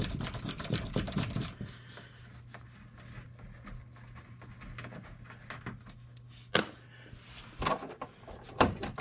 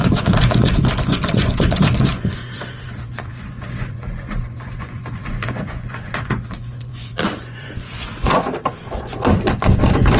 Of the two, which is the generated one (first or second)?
second